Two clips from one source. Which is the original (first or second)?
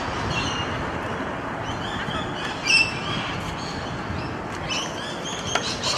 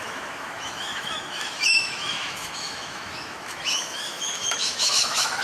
first